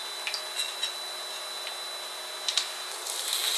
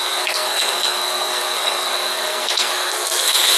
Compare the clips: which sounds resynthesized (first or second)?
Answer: second